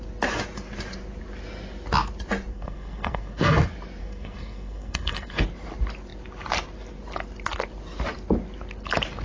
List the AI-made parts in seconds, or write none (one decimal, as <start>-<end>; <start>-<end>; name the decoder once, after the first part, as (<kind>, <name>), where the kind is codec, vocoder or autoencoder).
2.5-3.5 (codec, SNAC); 4.0-5.4